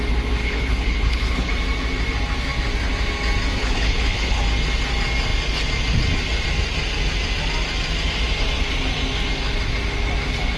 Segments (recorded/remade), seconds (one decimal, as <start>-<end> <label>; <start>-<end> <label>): 0.0-0.4 recorded; 0.4-1.5 remade; 1.5-3.6 recorded; 3.6-4.4 remade; 4.4-10.6 recorded